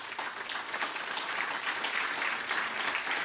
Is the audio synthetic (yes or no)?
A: no